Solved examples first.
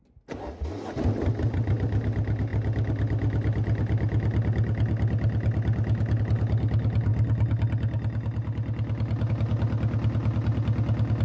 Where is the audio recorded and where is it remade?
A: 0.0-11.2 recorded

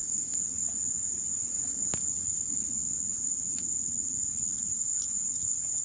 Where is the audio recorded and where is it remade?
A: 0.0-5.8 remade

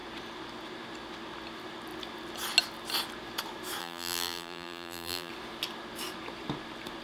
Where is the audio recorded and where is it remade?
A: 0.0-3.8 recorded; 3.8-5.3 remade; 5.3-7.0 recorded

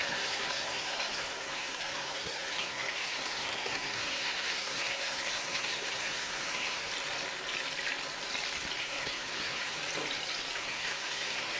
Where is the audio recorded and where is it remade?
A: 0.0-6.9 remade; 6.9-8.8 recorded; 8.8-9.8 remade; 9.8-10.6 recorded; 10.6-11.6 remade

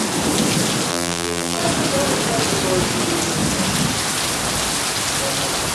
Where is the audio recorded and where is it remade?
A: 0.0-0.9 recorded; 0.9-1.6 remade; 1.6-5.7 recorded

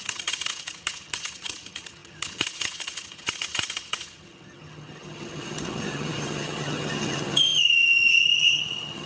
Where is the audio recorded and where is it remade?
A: 0.0-9.1 remade